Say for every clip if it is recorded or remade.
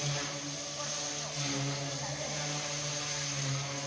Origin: recorded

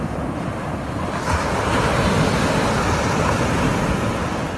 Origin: recorded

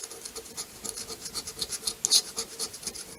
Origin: recorded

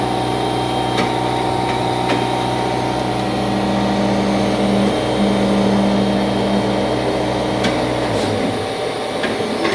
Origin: recorded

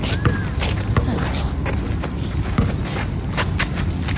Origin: recorded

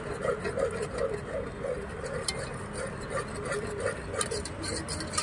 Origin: recorded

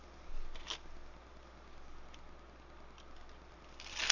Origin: recorded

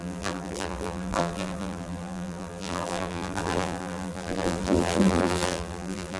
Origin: remade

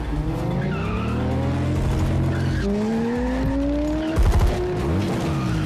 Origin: recorded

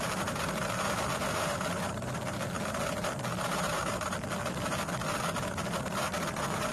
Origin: remade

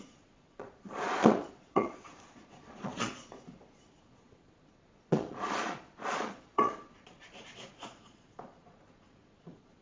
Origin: remade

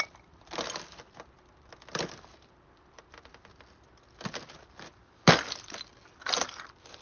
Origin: recorded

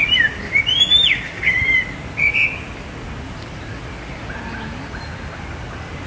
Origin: recorded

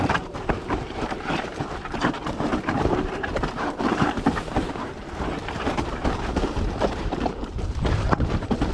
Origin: remade